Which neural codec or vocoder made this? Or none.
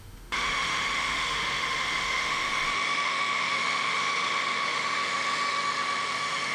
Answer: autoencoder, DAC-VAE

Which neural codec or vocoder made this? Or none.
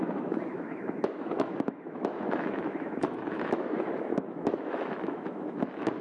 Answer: autoencoder, DAC-VAE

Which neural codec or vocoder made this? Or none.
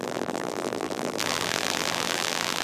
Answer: vocoder, BigVGAN v2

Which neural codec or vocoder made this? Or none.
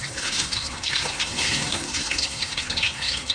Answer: codec, SNAC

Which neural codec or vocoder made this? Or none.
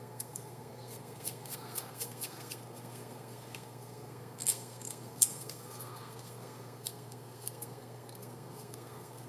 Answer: codec, SNAC